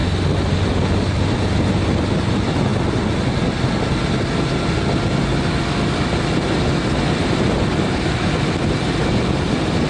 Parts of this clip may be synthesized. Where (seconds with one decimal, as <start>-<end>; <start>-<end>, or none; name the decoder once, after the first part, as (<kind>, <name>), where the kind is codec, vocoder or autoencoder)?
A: none

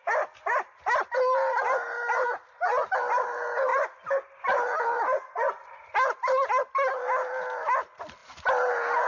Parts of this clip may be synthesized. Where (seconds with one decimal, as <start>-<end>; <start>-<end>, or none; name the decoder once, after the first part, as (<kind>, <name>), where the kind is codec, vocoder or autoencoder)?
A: none

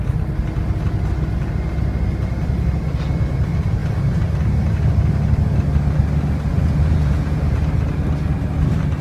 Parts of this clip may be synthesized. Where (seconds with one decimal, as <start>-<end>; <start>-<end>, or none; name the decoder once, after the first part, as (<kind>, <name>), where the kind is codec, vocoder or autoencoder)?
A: 6.5-7.6 (vocoder, Vocos)

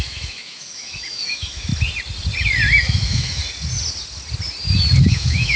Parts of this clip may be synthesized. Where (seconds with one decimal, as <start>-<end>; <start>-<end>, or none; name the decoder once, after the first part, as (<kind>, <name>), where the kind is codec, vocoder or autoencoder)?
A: 0.0-1.7 (autoencoder, DAC-VAE); 2.8-3.4; 5.0-5.6

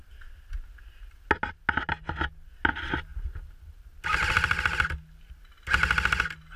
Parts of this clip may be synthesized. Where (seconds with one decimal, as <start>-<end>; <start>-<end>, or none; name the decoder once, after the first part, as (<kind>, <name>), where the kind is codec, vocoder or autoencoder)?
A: none